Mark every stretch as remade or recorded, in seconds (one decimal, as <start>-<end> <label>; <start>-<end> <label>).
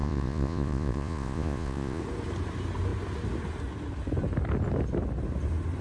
0.0-2.0 remade; 2.0-5.8 recorded